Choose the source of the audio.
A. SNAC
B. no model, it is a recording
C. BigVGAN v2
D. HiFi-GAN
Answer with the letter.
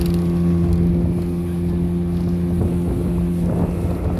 B